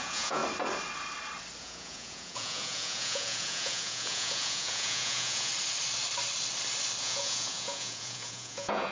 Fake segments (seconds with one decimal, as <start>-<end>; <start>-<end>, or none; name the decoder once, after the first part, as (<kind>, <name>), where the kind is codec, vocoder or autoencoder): 0.0-0.4 (vocoder, Vocos); 1.6-5.5; 7.0-8.9